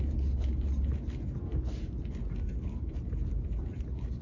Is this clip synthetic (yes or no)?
no